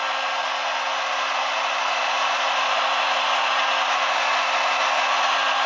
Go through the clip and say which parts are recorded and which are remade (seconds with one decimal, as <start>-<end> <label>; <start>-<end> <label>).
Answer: 0.0-2.0 recorded; 2.0-3.7 remade; 3.7-5.7 recorded